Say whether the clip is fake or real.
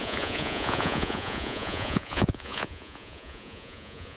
fake